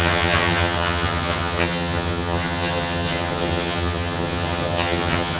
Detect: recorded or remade remade